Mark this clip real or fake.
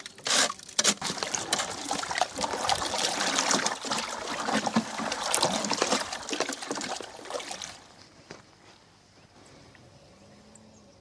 real